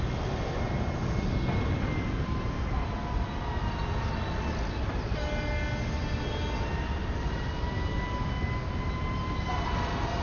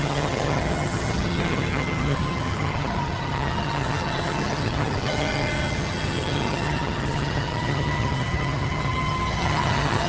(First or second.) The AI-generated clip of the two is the second